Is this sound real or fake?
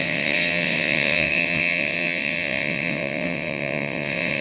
fake